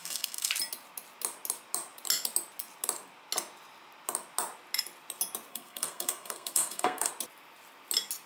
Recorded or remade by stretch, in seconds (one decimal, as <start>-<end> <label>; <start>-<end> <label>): 0.0-0.5 remade; 0.5-5.5 recorded; 5.5-7.1 remade; 7.1-8.3 recorded